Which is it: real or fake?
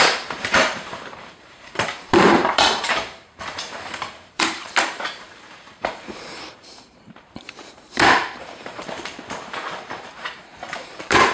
fake